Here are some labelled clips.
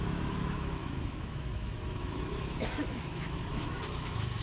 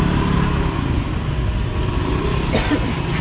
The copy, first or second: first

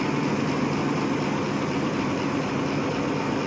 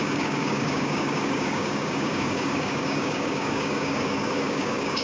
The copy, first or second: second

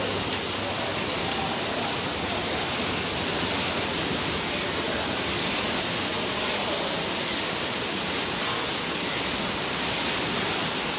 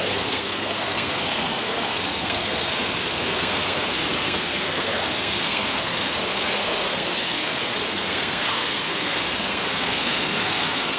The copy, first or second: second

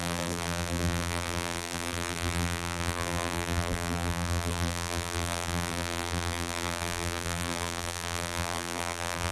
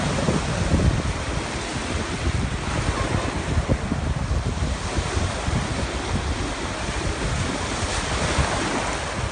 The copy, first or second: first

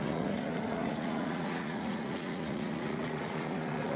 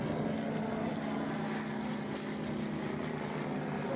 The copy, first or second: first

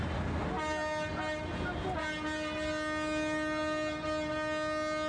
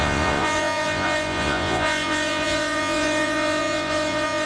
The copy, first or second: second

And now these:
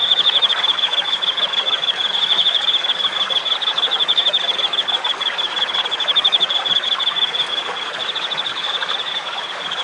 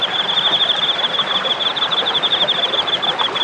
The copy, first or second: first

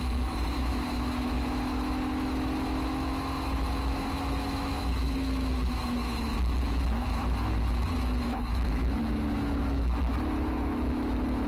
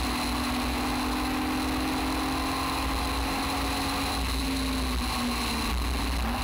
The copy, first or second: first